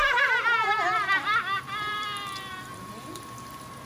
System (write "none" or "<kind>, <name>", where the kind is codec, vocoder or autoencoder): none